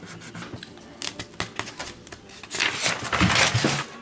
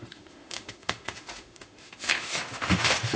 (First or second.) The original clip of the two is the first